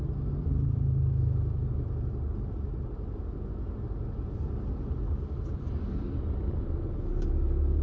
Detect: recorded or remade recorded